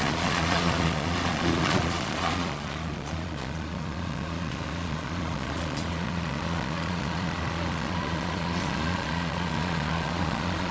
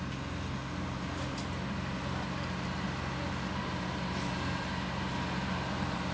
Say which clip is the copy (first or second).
first